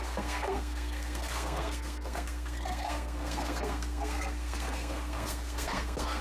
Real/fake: fake